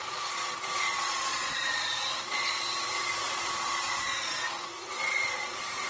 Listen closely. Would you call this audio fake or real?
fake